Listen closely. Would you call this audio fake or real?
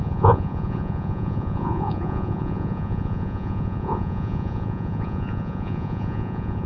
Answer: fake